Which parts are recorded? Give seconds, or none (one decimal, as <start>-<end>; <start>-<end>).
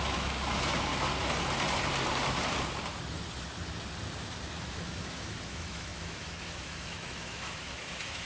0.9-4.6